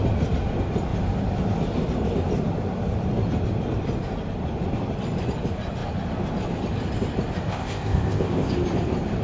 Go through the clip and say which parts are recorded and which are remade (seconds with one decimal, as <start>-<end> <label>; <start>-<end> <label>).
0.0-7.5 recorded; 7.5-8.5 remade; 8.5-9.2 recorded